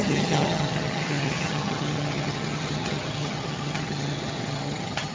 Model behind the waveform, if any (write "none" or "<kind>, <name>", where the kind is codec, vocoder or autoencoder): vocoder, HiFi-GAN